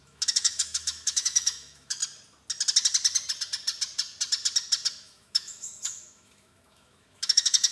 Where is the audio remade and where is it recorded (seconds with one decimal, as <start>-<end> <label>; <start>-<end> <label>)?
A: 0.0-2.0 remade; 2.0-4.9 recorded; 4.9-7.7 remade